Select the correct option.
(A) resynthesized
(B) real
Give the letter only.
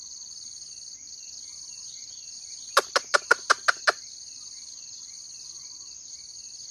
B